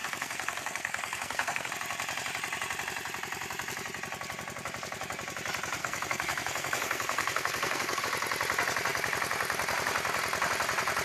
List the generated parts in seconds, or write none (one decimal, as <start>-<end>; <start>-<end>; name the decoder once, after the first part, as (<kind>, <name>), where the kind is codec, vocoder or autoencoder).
0.0-1.7 (codec, SNAC); 5.8-8.0